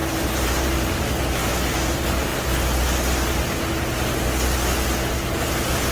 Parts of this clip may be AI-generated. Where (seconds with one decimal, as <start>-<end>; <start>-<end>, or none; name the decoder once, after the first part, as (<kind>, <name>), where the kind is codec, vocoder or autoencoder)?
0.0-0.7 (vocoder, BigVGAN v2)